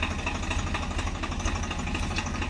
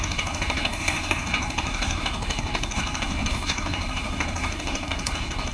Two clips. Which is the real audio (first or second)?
first